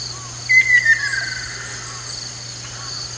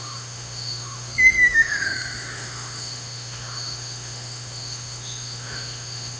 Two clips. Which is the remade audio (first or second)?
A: second